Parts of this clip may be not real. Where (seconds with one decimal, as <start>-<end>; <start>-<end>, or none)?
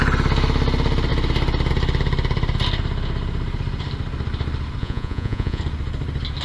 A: 4.8-5.6